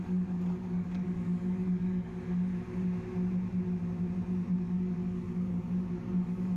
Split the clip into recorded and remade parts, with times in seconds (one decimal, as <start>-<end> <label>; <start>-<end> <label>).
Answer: 0.0-2.1 remade; 2.1-4.5 recorded; 4.5-6.6 remade